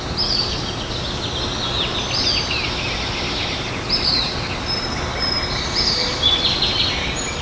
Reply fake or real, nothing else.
real